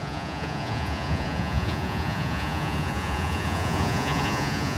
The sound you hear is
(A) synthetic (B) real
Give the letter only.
A